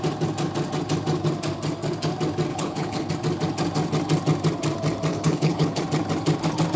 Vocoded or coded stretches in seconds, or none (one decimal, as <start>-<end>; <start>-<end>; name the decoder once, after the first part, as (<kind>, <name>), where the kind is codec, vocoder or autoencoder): 2.5-3.1 (codec, HILCodec); 5.1-5.8